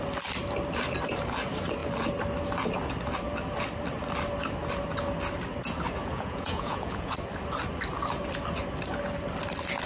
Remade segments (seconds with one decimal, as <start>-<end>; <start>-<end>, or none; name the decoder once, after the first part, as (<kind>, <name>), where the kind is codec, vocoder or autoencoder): 6.0-7.1 (vocoder, Vocos)